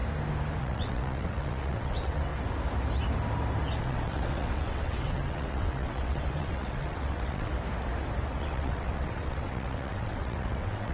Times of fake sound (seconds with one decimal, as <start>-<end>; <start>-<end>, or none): 0.6-2.3; 3.8-7.5; 8.4-10.9